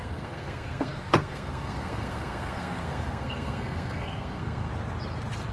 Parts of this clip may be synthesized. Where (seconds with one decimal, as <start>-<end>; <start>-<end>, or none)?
0.0-4.7